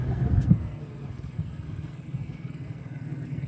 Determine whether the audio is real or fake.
fake